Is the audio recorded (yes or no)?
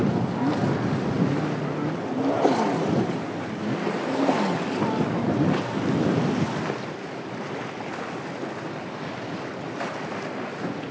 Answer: yes